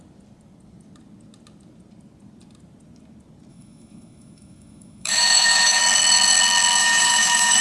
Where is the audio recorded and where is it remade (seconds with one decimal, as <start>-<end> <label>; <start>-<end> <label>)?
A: 0.0-3.5 recorded; 3.5-5.8 remade; 5.8-6.8 recorded; 6.8-7.6 remade